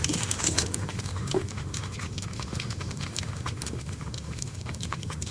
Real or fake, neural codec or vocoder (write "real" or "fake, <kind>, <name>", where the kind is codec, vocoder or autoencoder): fake, autoencoder, DAC-VAE